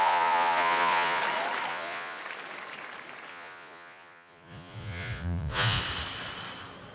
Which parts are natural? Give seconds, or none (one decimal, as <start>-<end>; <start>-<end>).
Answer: 1.2-1.7; 2.2-3.3; 5.8-6.9